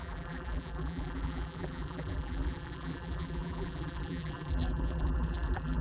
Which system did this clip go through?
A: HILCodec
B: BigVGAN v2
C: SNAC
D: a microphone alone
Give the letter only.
B